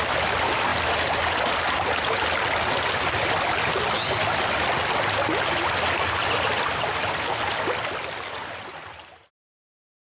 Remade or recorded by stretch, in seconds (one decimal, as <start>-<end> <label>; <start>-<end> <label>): 0.0-10.2 recorded